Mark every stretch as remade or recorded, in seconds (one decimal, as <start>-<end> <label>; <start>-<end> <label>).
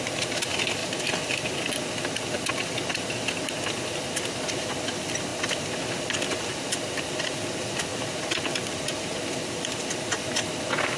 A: 0.0-11.0 recorded